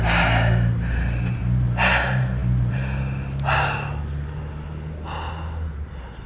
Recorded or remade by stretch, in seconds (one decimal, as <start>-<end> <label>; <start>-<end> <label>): 0.0-6.3 recorded